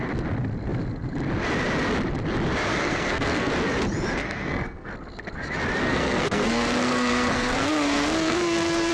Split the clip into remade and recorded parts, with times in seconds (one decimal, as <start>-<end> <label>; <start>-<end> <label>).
0.0-2.7 recorded; 2.7-3.5 remade; 3.5-4.2 recorded; 4.2-4.9 remade; 4.9-5.8 recorded; 5.8-8.9 remade